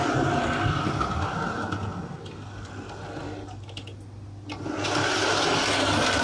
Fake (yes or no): no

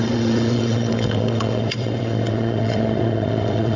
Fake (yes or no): yes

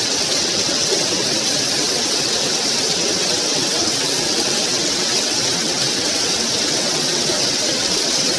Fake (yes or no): yes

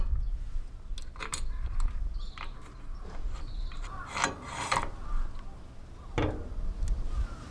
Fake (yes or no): no